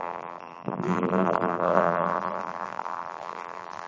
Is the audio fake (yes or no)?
yes